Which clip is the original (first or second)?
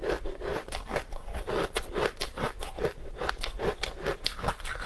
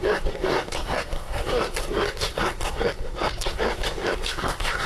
first